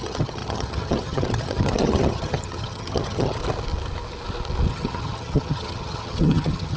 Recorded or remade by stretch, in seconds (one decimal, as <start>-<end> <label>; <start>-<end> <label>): 0.0-3.4 remade; 3.4-4.7 recorded; 4.7-6.8 remade